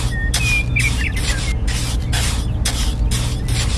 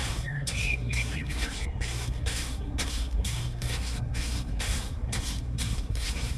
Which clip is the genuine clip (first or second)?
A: first